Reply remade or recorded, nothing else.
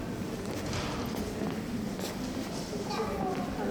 recorded